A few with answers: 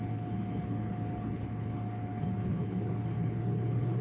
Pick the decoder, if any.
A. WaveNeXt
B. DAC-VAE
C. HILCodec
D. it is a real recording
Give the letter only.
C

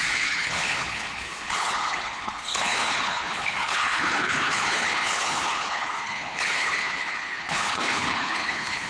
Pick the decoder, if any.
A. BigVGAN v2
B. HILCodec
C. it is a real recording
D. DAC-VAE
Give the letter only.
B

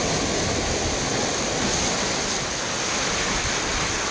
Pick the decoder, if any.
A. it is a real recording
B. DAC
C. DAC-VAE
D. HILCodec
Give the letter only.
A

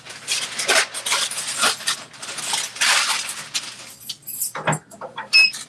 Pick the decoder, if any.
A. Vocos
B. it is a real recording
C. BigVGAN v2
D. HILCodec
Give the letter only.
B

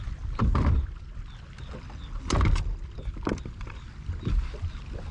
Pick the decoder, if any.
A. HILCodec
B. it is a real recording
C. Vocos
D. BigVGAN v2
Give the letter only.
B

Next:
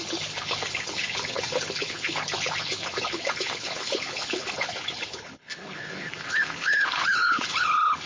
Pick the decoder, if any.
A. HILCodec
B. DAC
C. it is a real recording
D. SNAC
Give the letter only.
A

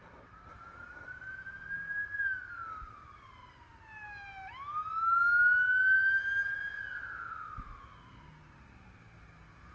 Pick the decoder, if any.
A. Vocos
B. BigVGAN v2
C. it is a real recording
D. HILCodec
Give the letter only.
C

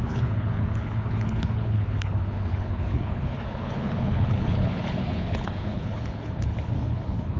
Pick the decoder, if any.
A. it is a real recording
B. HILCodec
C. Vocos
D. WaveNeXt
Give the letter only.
B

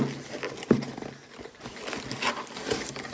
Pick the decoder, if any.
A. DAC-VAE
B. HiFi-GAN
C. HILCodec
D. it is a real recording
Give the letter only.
D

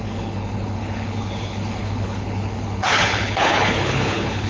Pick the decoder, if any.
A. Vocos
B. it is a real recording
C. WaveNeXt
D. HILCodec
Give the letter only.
D